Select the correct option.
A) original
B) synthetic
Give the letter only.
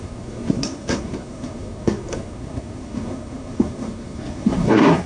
B